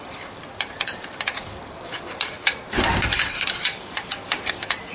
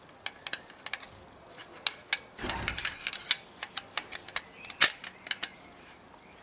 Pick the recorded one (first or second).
second